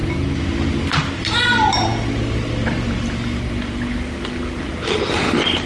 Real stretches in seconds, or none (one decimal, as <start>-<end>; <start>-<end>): 0.0-5.7